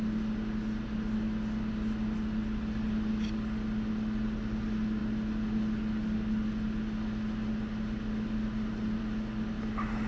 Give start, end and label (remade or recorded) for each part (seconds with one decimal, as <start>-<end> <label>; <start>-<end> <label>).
0.0-10.1 recorded